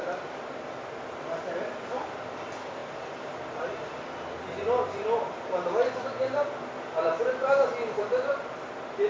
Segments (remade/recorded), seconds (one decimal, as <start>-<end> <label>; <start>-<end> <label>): 0.0-9.1 recorded